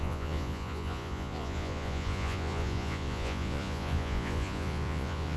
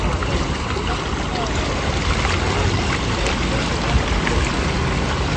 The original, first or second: second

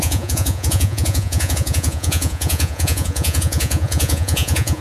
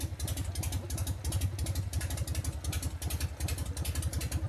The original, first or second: second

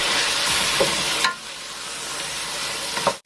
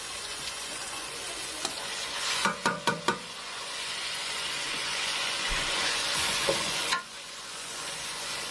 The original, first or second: first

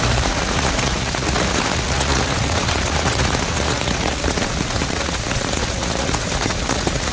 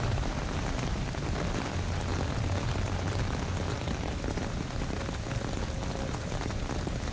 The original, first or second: second